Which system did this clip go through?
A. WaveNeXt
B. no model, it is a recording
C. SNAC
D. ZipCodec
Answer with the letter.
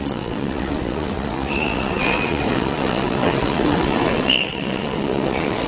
A